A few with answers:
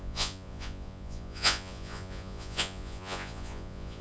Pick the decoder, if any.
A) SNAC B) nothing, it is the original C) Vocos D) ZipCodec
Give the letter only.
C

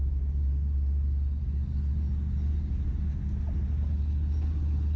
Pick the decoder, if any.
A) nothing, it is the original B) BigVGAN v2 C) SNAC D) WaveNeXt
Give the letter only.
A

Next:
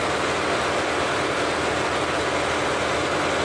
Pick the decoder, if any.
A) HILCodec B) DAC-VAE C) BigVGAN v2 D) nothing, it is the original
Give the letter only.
D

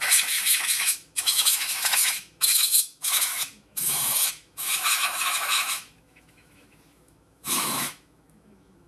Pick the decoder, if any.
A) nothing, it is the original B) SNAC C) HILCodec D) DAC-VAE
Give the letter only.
D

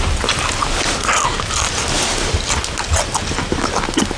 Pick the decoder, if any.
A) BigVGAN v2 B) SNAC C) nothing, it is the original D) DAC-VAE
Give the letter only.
C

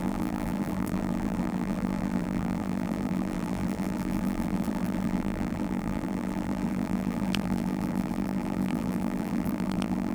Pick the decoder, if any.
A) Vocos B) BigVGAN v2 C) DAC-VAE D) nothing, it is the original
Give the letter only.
B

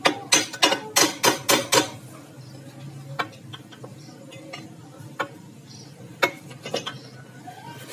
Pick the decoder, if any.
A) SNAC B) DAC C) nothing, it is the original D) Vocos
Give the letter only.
C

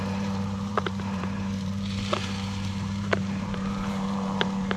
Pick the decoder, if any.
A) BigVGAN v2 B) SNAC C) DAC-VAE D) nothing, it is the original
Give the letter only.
A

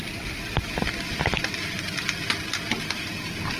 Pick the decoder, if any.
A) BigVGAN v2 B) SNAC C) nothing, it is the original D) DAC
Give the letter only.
A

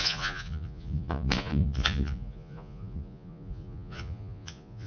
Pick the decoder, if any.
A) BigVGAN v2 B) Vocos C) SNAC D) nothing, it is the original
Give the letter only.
B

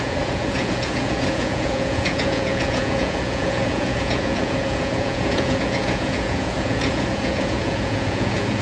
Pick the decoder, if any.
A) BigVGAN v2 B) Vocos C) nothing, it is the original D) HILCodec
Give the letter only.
B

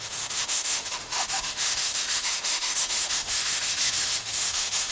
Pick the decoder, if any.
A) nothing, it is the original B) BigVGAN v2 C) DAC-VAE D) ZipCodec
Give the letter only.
C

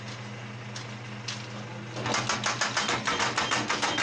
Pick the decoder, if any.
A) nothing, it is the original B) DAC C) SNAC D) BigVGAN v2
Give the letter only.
A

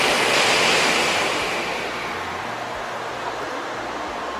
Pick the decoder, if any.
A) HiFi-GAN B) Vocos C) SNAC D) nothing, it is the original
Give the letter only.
D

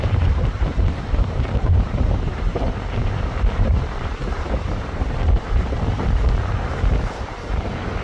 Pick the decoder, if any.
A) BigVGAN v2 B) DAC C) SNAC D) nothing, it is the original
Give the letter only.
A